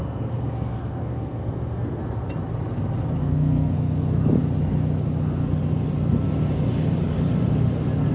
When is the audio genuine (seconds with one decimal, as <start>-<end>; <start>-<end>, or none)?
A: 2.0-3.2; 4.2-8.1